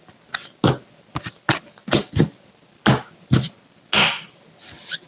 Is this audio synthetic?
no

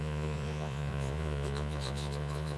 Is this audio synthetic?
yes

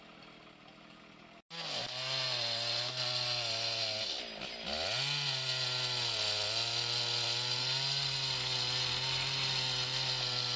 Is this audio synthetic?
no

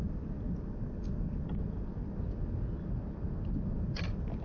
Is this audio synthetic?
no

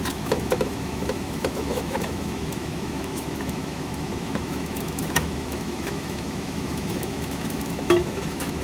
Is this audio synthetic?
yes